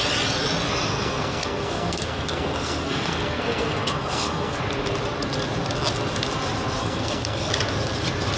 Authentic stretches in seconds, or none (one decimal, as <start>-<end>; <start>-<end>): 0.0-0.9; 4.6-6.8; 7.5-8.4